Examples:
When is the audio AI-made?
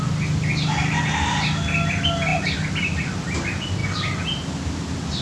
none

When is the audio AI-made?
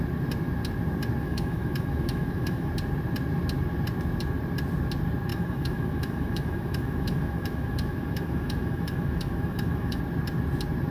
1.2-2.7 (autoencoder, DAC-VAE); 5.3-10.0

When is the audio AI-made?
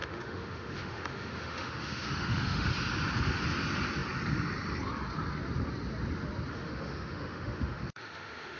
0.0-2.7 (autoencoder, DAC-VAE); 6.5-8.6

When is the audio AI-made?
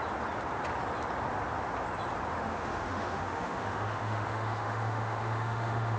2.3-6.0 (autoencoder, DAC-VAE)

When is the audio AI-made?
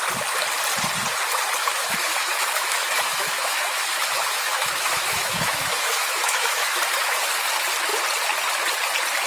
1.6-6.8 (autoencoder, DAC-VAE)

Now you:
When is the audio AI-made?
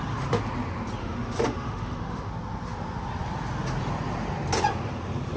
1.0-2.3 (autoencoder, DAC-VAE)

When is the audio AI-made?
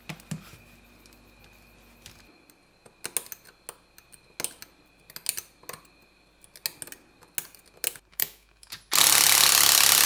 8.1-8.7 (autoencoder, DAC-VAE)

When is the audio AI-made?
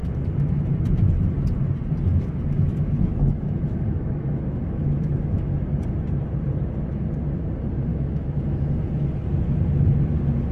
0.0-0.6 (autoencoder, DAC-VAE); 2.1-5.6; 7.9-8.7